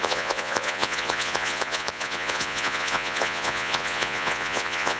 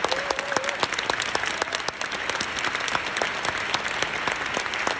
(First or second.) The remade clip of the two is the first